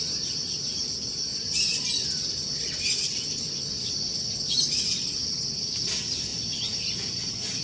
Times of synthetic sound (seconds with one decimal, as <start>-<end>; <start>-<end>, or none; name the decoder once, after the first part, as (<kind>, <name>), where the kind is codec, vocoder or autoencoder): none